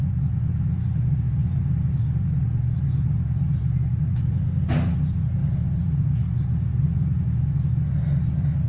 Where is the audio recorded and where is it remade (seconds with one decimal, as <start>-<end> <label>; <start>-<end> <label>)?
0.0-8.7 recorded